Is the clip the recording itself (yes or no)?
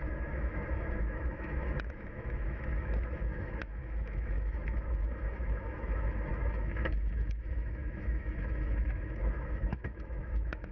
no